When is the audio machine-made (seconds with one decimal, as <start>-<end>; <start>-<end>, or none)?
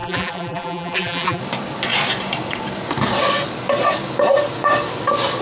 0.0-1.4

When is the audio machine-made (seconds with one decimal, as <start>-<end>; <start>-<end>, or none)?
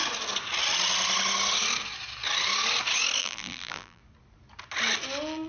3.2-4.0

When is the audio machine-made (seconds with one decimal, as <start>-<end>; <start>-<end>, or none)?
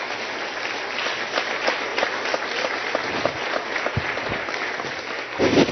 none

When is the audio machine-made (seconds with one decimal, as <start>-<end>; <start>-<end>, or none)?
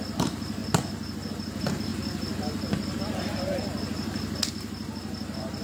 0.0-0.6; 1.3-5.6